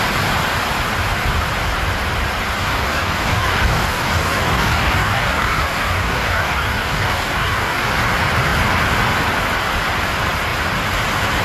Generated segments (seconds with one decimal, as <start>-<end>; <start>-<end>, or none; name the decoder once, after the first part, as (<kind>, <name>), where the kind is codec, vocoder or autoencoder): 2.6-7.9 (codec, DAC)